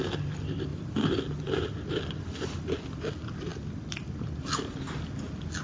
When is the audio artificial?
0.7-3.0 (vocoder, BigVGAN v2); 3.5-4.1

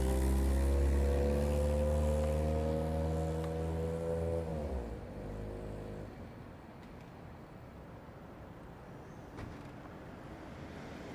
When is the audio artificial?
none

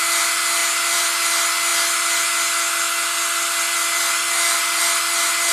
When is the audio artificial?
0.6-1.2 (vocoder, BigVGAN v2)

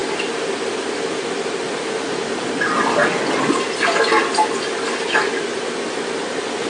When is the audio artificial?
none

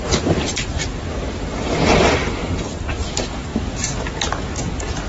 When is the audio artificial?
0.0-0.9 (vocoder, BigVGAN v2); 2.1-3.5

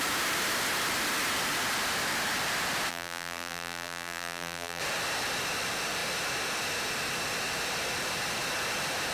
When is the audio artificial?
2.9-4.8 (vocoder, BigVGAN v2)